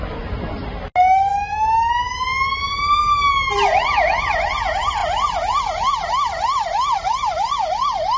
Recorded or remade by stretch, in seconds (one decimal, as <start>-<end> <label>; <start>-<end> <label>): 0.0-1.3 recorded; 1.3-1.9 remade; 1.9-8.2 recorded